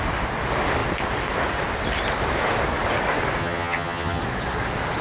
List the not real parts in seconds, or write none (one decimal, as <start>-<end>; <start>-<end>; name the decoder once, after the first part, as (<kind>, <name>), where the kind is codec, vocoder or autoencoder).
3.4-4.2 (vocoder, HiFi-GAN)